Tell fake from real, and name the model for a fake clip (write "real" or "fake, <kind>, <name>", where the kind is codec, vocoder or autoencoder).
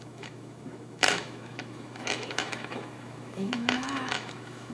fake, autoencoder, DAC-VAE